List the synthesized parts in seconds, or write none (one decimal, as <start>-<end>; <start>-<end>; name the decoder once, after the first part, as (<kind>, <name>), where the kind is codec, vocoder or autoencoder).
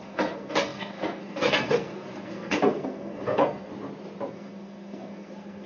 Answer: 0.0-3.7 (codec, SNAC); 4.3-5.7